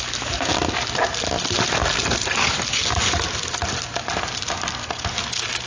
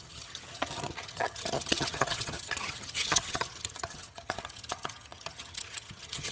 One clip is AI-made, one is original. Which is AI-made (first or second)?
second